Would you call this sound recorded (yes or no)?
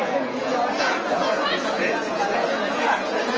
no